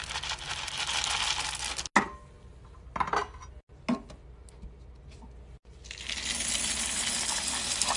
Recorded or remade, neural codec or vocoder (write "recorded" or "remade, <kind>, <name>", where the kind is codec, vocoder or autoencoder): recorded